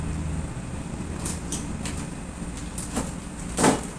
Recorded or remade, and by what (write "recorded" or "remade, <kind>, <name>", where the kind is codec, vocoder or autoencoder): recorded